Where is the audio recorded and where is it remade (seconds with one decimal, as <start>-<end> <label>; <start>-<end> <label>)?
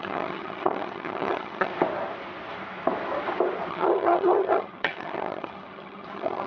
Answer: 0.0-1.7 remade; 1.7-3.7 recorded; 3.7-6.5 remade